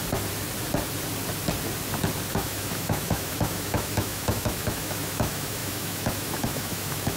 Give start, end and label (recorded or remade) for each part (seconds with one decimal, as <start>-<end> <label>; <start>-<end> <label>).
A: 0.0-2.3 recorded; 2.3-7.2 remade